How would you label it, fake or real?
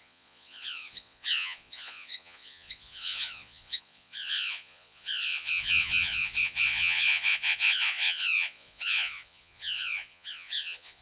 fake